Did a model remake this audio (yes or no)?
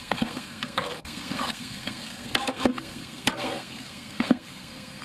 yes